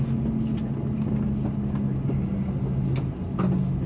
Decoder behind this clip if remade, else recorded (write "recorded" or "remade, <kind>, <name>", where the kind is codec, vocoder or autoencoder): recorded